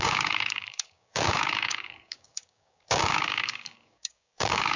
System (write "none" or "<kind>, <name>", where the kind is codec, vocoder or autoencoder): codec, DAC